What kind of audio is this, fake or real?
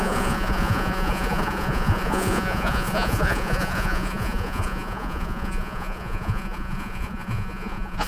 fake